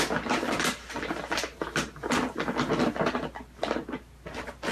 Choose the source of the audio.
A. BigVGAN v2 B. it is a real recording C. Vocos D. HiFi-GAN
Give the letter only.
B